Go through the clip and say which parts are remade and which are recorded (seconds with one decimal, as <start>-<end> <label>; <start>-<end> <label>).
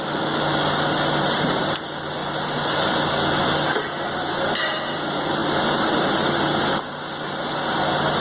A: 0.0-8.2 recorded